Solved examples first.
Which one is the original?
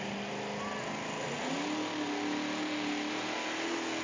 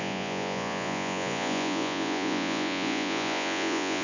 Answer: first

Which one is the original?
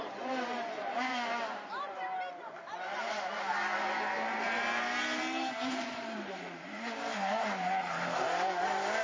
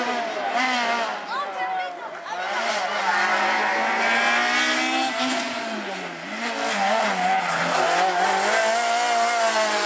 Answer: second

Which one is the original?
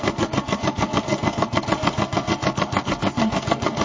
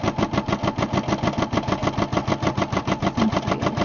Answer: second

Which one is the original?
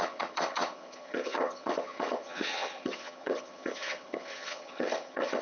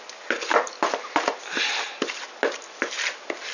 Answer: second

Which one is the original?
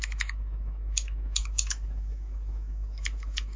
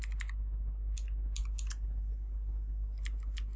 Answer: second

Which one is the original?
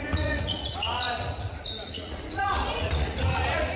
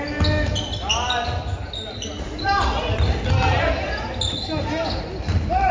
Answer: second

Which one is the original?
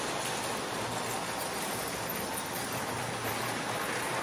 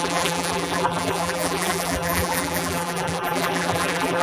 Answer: first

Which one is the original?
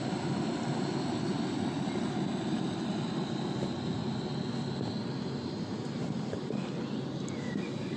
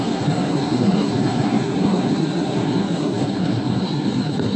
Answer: first